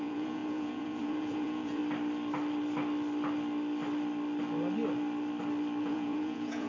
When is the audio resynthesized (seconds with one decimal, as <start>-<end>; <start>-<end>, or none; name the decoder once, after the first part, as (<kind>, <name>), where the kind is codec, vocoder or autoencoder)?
0.0-1.8 (vocoder, Vocos); 5.8-6.7